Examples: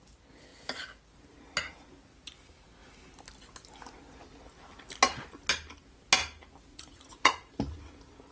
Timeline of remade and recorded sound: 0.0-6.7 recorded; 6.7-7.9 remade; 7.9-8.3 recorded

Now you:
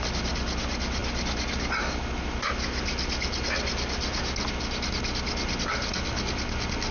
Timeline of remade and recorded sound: 0.0-6.9 recorded

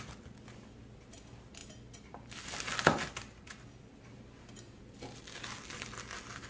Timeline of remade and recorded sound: 0.0-6.5 recorded

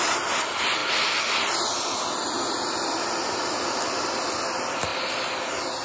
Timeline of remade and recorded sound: 0.0-5.8 recorded